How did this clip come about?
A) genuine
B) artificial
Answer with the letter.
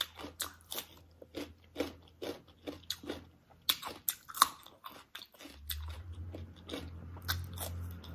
A